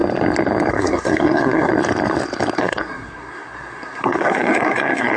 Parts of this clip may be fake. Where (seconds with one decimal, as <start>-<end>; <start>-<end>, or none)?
0.7-1.7; 2.6-5.2